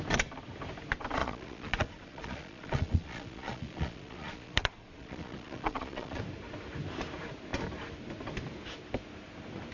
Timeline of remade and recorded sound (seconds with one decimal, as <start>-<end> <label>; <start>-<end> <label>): 0.0-1.2 recorded; 1.2-6.2 remade; 6.2-9.7 recorded